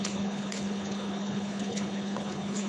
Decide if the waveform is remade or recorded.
remade